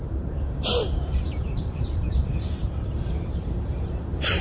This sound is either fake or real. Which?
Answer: fake